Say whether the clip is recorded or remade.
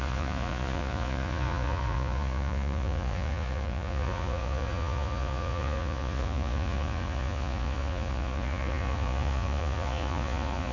remade